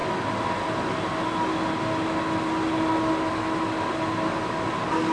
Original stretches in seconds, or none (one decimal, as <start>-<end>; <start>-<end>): 0.0-5.1